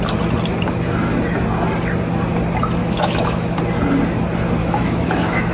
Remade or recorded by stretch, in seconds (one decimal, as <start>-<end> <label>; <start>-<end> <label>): 0.0-2.8 recorded; 2.8-3.6 remade; 3.6-4.6 recorded; 4.6-5.5 remade